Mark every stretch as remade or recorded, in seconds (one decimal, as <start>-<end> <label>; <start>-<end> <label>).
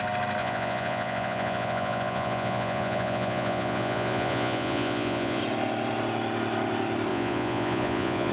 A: 0.0-0.4 recorded; 0.4-5.4 remade; 5.4-7.1 recorded; 7.1-8.3 remade